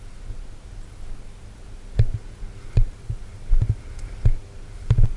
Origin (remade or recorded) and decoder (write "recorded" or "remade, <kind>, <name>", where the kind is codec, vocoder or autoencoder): recorded